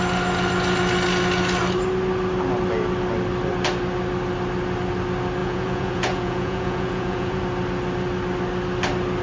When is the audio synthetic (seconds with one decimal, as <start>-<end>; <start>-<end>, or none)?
5.4-7.4